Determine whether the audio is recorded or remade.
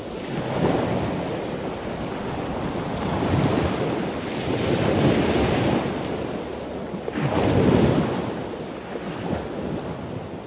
recorded